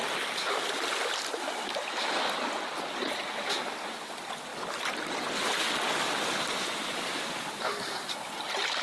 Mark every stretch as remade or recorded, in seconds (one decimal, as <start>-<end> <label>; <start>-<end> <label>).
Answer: 0.0-8.8 recorded